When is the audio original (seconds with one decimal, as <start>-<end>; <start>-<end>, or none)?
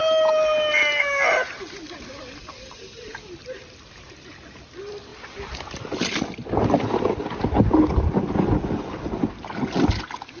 0.0-10.4